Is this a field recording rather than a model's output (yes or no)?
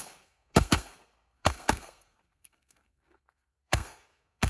no